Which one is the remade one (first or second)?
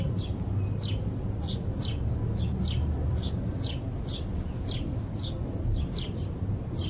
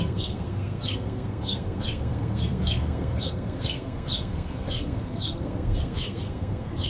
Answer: second